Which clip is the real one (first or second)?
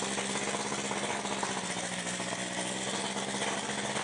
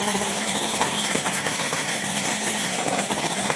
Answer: first